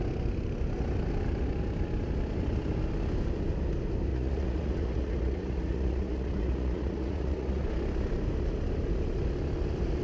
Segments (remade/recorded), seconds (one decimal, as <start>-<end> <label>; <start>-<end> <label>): 0.0-4.1 recorded; 4.1-7.6 remade; 7.6-10.0 recorded